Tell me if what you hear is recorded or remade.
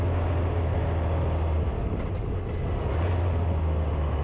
recorded